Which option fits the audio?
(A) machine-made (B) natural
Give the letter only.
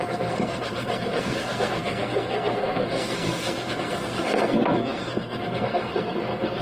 A